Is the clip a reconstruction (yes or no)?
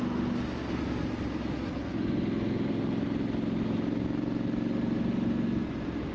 no